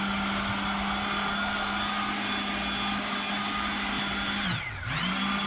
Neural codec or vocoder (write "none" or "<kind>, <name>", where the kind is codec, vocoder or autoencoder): none